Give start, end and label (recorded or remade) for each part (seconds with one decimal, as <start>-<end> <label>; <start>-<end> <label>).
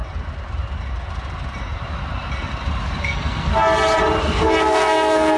0.0-3.0 recorded; 3.0-3.5 remade; 3.5-4.2 recorded; 4.2-5.4 remade